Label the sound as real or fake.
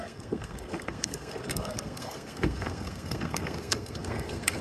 fake